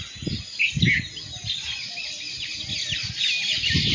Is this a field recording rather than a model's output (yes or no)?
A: yes